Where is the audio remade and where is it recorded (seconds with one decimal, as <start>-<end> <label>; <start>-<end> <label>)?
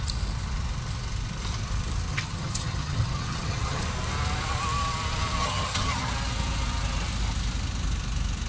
0.0-2.1 recorded; 2.1-3.8 remade; 3.8-5.4 recorded; 5.4-6.1 remade; 6.1-8.5 recorded